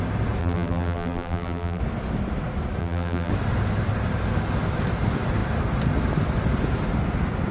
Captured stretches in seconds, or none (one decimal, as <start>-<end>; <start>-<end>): 0.0-0.4; 1.8-2.8; 3.3-7.5